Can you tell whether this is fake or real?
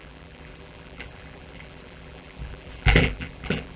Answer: fake